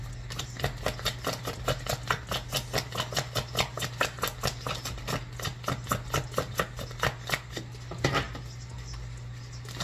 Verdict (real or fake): real